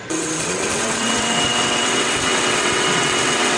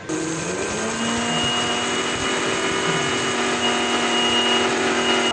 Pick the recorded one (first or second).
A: second